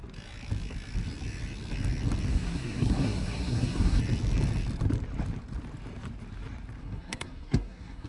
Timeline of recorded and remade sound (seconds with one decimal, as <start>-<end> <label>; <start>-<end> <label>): 0.0-2.3 recorded; 2.3-4.0 remade; 4.0-6.8 recorded; 6.8-8.1 remade

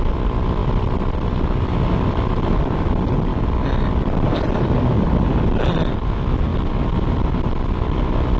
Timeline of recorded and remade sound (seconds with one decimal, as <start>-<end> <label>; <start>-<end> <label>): 0.0-8.4 recorded

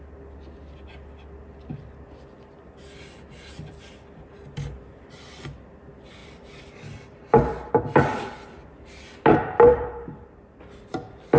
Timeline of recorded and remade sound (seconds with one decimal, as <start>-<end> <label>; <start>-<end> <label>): 0.0-6.2 recorded; 6.2-7.7 remade; 7.7-9.7 recorded; 9.7-10.6 remade; 10.6-11.4 recorded

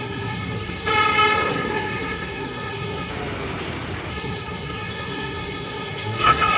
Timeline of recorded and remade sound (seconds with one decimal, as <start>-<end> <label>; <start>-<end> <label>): 0.0-0.9 remade; 0.9-1.5 recorded; 1.5-3.1 remade; 3.1-4.1 recorded; 4.1-6.6 remade

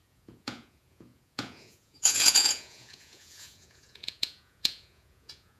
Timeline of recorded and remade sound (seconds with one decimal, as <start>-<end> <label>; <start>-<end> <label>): 0.0-5.6 remade